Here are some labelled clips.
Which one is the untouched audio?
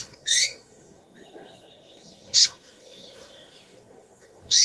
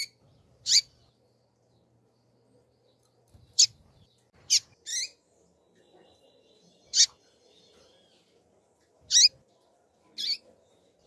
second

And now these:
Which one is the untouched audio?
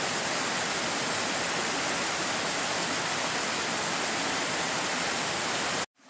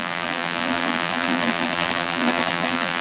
first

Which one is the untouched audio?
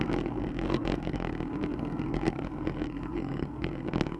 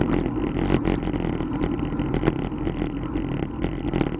second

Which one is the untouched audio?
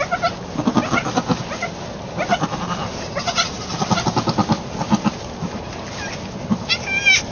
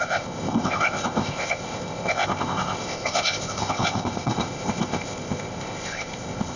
first